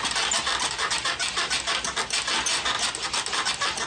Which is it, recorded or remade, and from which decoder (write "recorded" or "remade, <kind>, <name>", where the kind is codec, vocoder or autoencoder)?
recorded